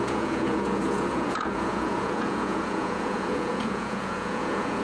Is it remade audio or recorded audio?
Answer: remade